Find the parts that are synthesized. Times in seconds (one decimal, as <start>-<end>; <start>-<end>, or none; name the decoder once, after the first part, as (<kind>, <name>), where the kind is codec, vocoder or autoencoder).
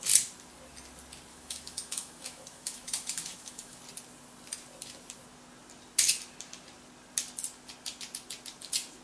1.3-3.8 (autoencoder, DAC-VAE)